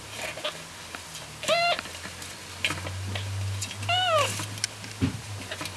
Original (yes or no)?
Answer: yes